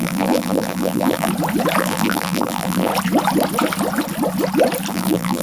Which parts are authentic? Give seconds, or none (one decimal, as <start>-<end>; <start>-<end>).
1.3-1.8; 2.9-4.9